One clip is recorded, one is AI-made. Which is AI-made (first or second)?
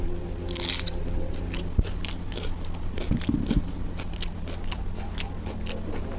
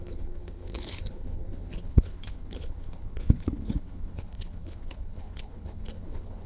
second